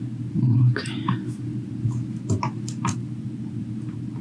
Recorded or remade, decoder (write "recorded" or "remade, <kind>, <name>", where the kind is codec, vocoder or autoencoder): remade, vocoder, BigVGAN v2